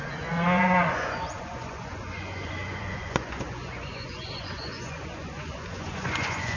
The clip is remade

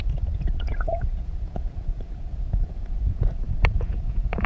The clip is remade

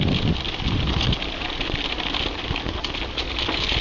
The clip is recorded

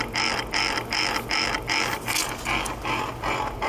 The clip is recorded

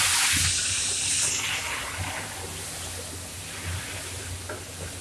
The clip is recorded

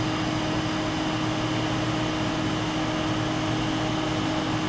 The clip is recorded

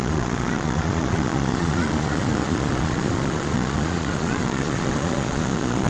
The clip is remade